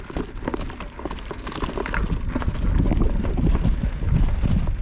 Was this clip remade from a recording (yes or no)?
no